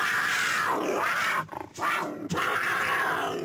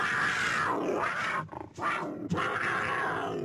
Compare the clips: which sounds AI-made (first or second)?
first